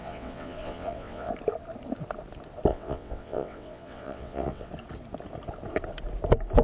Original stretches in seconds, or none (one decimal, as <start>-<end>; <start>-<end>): 1.3-2.7; 4.7-6.6